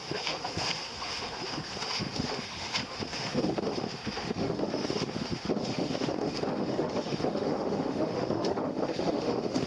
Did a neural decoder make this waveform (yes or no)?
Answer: yes